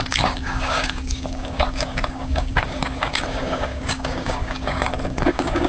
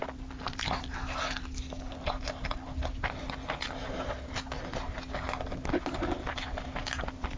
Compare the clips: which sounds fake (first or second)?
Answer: first